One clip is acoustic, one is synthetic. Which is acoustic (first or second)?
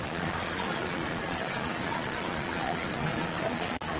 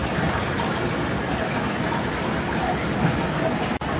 second